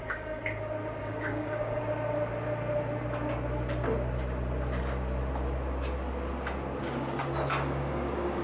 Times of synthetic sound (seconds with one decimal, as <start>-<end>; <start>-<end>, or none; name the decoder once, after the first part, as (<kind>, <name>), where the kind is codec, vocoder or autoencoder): 0.0-0.4 (codec, DAC); 1.0-1.8; 6.8-8.4